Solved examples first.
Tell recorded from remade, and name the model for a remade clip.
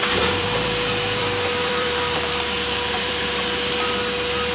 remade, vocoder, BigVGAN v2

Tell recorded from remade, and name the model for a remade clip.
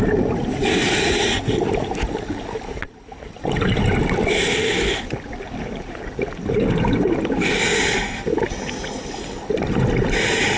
recorded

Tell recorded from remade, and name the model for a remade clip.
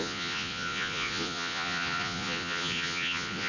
remade, vocoder, Vocos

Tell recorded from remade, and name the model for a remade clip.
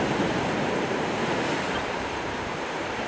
remade, vocoder, BigVGAN v2